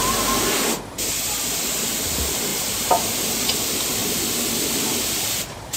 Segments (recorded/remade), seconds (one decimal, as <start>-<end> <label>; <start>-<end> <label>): 0.0-1.0 recorded; 1.0-4.0 remade; 4.0-5.2 recorded; 5.2-5.8 remade